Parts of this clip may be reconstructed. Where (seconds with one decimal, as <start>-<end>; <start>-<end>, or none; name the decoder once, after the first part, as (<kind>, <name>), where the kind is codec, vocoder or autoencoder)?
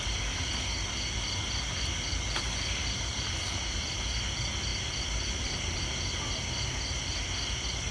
4.7-5.8 (vocoder, BigVGAN v2)